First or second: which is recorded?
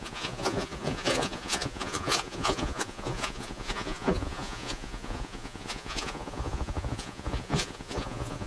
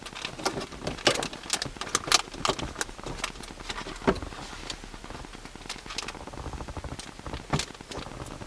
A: second